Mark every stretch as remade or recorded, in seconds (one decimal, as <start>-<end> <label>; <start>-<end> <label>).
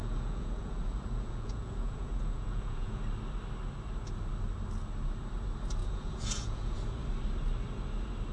0.0-3.0 remade; 3.0-5.8 recorded; 5.8-6.8 remade; 6.8-8.3 recorded